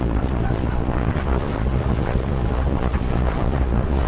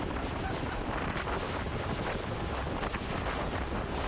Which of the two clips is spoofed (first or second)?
first